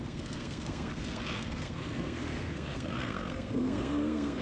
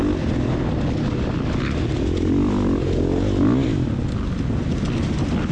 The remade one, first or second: first